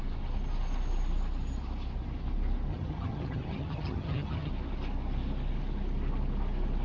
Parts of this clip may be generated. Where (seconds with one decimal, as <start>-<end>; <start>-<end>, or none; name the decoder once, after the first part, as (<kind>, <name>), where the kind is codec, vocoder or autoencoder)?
2.7-4.5 (vocoder, HiFi-GAN)